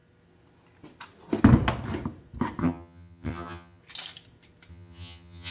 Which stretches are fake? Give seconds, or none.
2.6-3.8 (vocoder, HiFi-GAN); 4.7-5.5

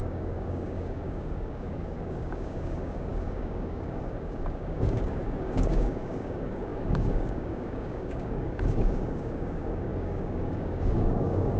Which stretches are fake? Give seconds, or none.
0.0-11.6 (codec, DAC)

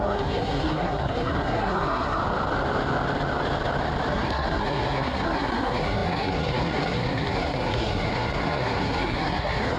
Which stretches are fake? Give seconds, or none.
0.0-2.2 (codec, SNAC); 4.1-9.8

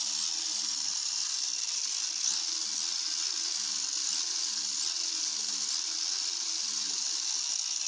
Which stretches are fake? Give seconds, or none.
none

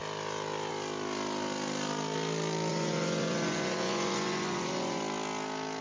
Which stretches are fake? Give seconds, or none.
2.7-5.0 (vocoder, Vocos)

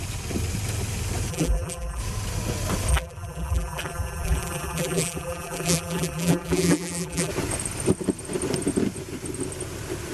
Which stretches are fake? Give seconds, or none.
1.3-2.0 (vocoder, BigVGAN v2); 2.9-7.3